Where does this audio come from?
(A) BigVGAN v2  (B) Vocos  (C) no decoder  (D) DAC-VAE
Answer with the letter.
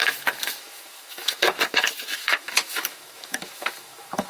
D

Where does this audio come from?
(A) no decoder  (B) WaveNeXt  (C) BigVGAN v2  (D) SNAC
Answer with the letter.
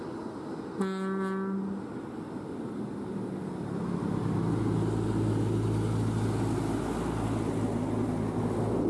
A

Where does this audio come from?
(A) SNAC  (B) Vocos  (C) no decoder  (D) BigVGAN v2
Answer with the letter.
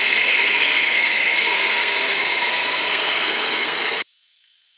A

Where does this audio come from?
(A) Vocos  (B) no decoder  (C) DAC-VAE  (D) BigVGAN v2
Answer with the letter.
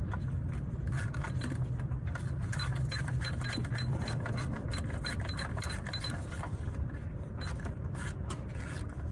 D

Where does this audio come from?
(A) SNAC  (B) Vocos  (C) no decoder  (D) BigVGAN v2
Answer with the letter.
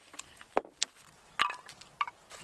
C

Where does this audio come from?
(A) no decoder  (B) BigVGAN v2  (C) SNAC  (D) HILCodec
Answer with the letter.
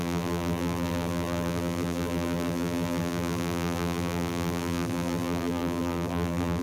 B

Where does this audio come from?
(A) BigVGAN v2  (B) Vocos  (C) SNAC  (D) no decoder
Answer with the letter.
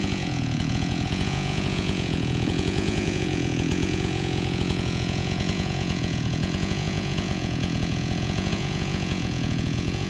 B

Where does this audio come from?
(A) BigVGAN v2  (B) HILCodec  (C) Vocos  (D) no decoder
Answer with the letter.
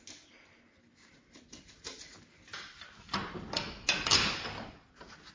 D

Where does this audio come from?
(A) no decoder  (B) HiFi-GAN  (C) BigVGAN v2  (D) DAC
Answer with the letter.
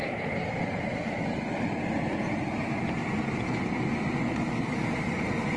C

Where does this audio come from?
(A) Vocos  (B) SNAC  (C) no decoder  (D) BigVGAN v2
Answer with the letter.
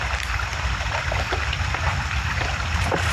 C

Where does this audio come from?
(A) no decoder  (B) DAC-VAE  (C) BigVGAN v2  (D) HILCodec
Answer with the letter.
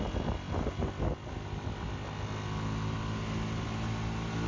A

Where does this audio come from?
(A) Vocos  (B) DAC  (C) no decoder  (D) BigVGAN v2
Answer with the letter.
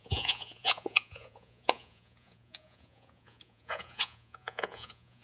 A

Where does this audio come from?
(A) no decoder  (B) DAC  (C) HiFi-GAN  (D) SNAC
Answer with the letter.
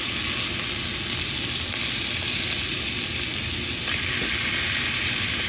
A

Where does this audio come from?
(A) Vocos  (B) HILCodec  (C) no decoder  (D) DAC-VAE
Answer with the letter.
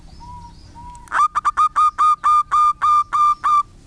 C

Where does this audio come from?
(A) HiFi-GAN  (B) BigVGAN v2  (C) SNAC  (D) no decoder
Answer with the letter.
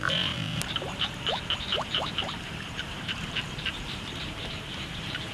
B